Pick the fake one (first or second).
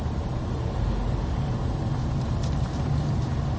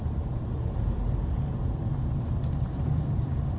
second